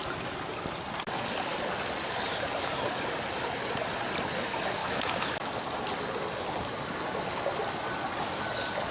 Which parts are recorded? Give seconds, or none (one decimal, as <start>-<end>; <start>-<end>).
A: 0.0-4.8; 5.5-8.9

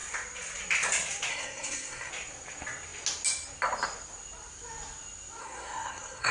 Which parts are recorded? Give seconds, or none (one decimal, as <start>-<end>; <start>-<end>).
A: 0.0-1.3; 2.1-5.4

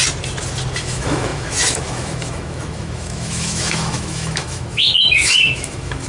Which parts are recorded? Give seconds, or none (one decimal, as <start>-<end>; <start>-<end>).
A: 0.0-0.8